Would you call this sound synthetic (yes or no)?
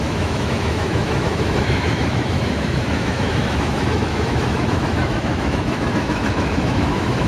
yes